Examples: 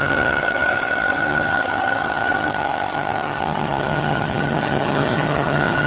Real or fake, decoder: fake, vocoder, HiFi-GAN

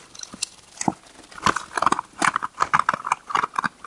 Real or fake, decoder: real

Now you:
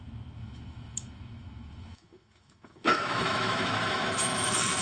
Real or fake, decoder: fake, autoencoder, DAC-VAE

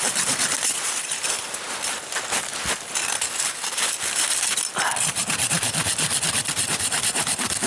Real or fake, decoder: real